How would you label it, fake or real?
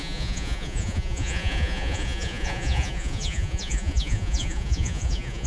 fake